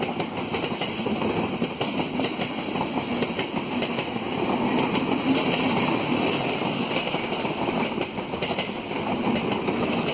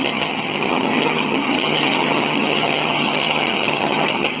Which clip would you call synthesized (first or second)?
second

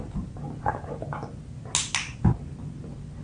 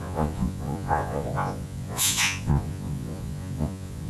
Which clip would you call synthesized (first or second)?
second